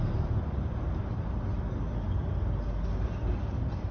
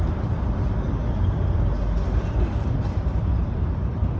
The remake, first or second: second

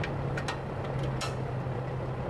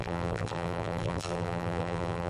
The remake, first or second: second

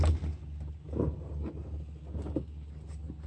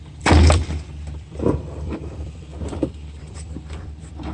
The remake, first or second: second